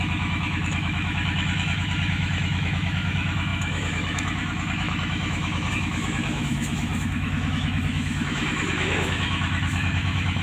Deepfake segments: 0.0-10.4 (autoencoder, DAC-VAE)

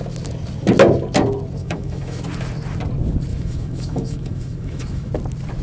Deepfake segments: 1.6-2.2 (autoencoder, DAC-VAE); 3.3-5.1

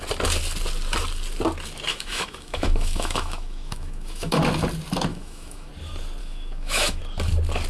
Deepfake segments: 1.9-4.4 (autoencoder, DAC-VAE); 5.1-5.7; 6.2-7.0

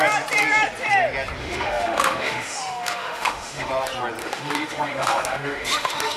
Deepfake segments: 1.4-3.7 (autoencoder, DAC-VAE); 4.2-6.2

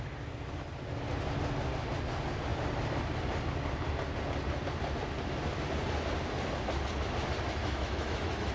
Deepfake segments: 7.6-8.5 (autoencoder, DAC-VAE)

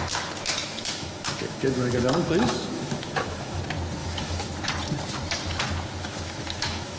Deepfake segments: 0.6-3.6 (autoencoder, DAC-VAE); 4.0-4.5; 6.0-7.0